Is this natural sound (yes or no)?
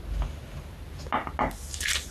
yes